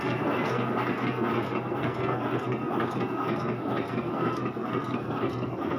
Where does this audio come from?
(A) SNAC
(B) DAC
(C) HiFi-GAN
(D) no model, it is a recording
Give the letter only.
A